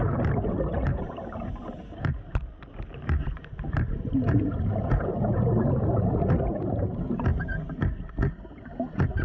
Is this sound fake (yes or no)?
yes